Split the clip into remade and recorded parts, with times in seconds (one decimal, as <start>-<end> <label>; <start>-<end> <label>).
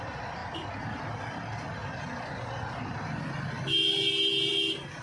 0.0-5.0 recorded